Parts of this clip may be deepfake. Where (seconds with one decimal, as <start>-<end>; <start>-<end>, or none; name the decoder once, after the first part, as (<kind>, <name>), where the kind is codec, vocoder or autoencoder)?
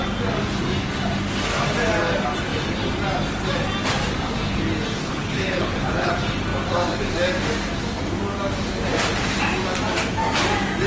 5.0-6.1 (codec, HILCodec)